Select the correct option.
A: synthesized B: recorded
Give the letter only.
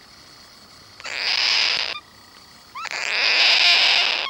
B